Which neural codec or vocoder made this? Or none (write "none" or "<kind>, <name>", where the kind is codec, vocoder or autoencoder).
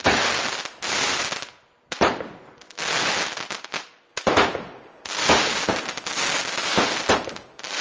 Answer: none